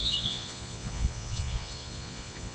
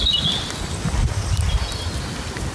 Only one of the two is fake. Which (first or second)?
first